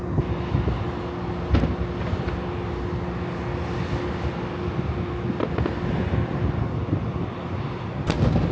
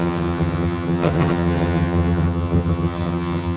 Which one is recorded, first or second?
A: first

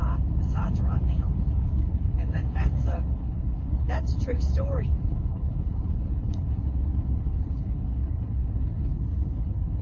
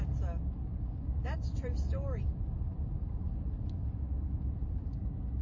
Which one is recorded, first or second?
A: second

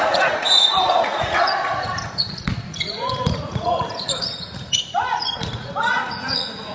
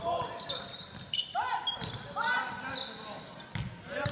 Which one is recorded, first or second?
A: second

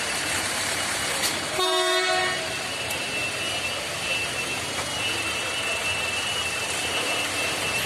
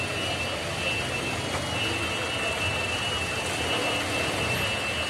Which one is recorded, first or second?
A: second